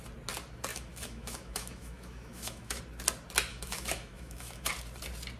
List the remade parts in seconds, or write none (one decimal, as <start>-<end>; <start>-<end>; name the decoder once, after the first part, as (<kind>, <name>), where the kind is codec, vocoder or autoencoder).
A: 0.7-2.8 (autoencoder, DAC-VAE); 3.5-4.7

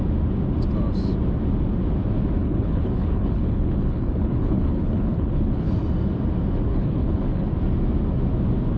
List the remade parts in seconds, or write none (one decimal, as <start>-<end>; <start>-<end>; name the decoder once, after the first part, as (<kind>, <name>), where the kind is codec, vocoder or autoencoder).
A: 2.4-5.7 (codec, HILCodec); 6.7-7.5